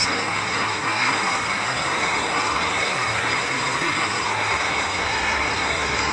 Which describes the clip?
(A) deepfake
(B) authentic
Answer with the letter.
A